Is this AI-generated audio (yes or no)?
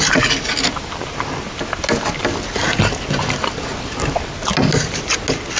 no